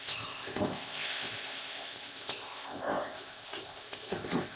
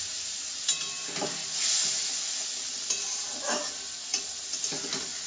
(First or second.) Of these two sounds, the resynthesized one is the first